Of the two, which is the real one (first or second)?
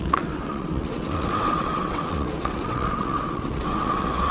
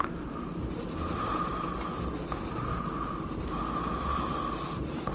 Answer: second